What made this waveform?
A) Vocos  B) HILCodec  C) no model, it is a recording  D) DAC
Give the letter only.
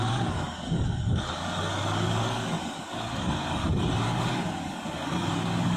D